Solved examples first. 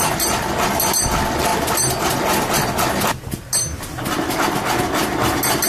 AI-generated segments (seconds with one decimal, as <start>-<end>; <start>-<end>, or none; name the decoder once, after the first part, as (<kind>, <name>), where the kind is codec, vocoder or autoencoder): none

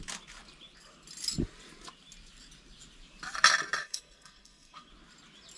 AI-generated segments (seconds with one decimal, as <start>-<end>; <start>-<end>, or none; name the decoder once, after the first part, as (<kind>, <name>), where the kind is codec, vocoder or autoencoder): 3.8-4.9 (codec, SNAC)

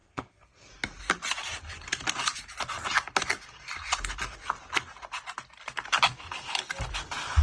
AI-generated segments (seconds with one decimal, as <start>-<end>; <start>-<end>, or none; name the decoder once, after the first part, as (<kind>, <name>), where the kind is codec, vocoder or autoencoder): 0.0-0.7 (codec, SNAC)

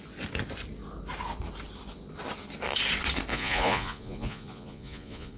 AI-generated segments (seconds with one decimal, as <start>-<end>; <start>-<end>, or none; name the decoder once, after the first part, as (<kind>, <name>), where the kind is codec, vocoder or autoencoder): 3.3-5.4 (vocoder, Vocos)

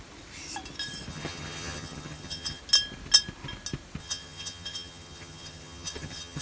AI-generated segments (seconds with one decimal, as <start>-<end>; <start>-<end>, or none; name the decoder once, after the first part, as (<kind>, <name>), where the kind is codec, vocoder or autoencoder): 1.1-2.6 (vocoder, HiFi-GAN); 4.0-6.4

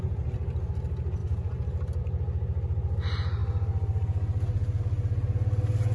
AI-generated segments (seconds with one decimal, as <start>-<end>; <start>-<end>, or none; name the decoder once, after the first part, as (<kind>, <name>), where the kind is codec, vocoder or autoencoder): none